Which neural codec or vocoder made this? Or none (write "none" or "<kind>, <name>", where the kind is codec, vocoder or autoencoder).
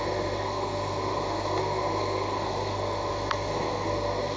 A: codec, SNAC